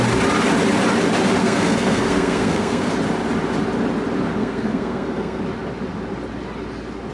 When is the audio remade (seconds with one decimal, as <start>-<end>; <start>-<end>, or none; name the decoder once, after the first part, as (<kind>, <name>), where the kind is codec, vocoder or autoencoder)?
1.4-2.9 (codec, SNAC); 4.4-5.4